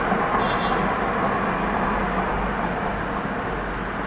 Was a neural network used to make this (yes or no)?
no